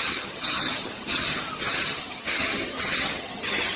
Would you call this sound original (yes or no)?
no